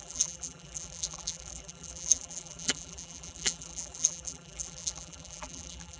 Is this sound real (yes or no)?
no